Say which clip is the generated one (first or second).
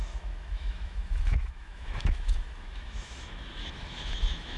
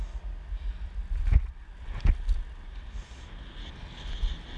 first